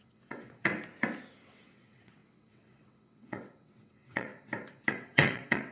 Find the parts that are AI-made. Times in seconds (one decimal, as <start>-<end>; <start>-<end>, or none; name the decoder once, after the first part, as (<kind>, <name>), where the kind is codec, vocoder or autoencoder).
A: 0.0-0.7 (vocoder, WaveNeXt); 1.4-4.3; 4.9-5.7